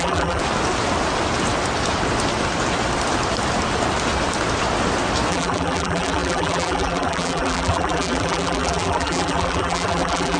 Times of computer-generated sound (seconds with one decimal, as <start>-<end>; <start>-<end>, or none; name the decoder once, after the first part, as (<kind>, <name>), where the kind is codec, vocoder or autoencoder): 0.0-0.4 (vocoder, BigVGAN v2); 5.3-10.4